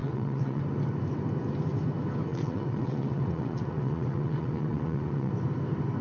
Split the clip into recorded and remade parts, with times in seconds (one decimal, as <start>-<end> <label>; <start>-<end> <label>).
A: 0.0-0.6 remade; 0.6-2.3 recorded; 2.3-5.3 remade; 5.3-6.0 recorded